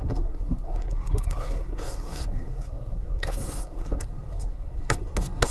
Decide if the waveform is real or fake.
fake